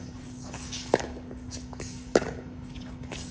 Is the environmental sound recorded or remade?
remade